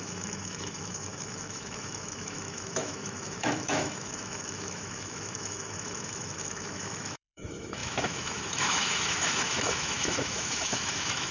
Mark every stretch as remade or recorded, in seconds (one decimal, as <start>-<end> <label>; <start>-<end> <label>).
0.0-11.3 remade